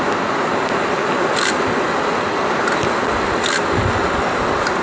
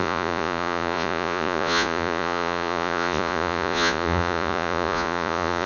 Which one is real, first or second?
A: first